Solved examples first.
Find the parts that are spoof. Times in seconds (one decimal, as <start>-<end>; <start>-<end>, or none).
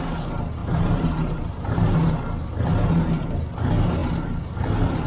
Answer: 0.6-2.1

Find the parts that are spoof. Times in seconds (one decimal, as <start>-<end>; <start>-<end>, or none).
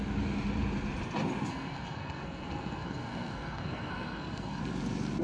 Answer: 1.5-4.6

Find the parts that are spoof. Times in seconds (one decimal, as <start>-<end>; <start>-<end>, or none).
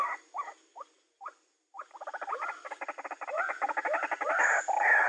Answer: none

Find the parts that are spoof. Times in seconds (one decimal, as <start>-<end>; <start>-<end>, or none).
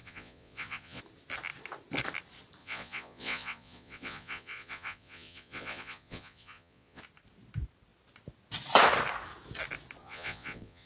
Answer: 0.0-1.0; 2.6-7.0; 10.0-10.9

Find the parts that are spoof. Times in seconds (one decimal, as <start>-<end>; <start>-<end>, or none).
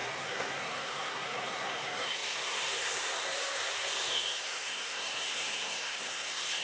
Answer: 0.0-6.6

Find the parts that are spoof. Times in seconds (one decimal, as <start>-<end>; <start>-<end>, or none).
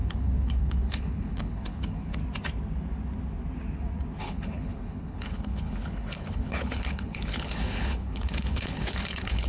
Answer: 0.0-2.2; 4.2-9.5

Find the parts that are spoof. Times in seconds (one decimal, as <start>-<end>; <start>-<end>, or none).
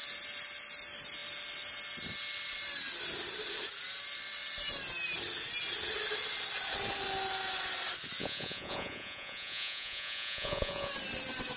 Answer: 8.2-10.9